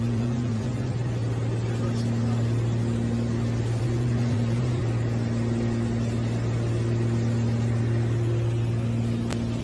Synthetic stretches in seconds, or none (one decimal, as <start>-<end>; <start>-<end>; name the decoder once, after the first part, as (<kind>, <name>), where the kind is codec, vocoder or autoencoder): 0.0-1.2 (vocoder, Vocos); 3.8-4.8

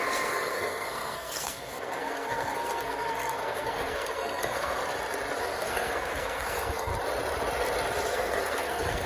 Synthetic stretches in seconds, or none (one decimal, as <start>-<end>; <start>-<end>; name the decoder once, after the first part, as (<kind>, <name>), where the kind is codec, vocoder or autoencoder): 0.0-4.8 (codec, SNAC); 5.4-6.9; 8.1-9.1

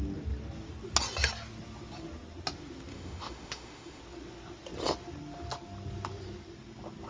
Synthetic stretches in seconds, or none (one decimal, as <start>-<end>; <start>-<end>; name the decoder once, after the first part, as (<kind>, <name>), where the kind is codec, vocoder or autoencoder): 2.9-4.0 (autoencoder, DAC-VAE)

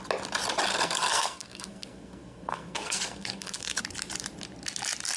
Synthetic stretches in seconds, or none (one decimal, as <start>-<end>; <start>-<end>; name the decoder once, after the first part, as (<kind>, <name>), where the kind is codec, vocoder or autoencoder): 0.7-3.8 (codec, SNAC)

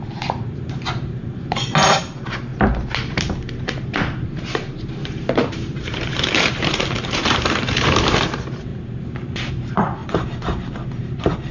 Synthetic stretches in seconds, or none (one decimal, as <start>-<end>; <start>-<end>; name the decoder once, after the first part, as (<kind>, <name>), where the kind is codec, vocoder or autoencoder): 0.0-2.5 (vocoder, BigVGAN v2); 3.6-8.7; 9.5-10.0; 11.0-11.5